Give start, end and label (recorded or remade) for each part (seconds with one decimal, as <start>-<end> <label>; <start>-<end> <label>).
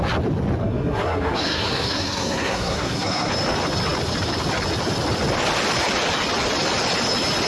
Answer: 0.0-0.6 recorded; 0.6-3.3 remade; 3.3-7.5 recorded